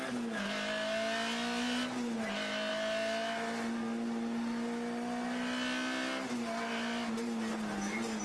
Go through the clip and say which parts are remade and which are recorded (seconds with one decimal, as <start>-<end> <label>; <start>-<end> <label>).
0.0-8.2 recorded

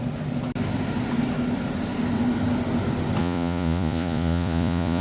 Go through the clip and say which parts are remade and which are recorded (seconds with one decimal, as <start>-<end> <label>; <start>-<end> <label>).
0.0-3.2 recorded; 3.2-5.0 remade

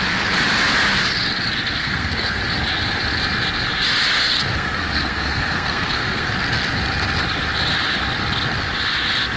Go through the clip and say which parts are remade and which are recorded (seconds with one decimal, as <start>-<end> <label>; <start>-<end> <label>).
0.0-1.8 recorded; 1.8-2.4 remade; 2.4-4.2 recorded; 4.2-6.3 remade; 6.3-9.4 recorded

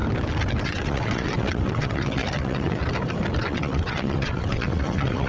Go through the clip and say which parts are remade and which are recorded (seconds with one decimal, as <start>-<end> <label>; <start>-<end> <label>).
0.0-0.6 recorded; 0.6-2.8 remade; 2.8-3.4 recorded; 3.4-5.3 remade

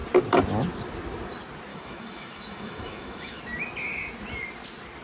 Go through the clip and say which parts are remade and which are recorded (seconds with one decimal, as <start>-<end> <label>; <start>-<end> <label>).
0.0-1.7 recorded; 1.7-3.4 remade; 3.4-5.0 recorded

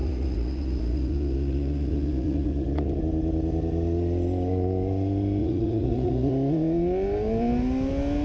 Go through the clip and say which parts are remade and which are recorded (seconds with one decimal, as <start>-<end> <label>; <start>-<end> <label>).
0.0-3.0 remade; 3.0-5.4 recorded; 5.4-6.3 remade; 6.3-8.2 recorded

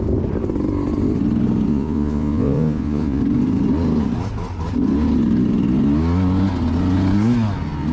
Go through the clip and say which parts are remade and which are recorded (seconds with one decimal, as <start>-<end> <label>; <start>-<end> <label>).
0.0-1.7 recorded; 1.7-3.2 remade; 3.2-7.9 recorded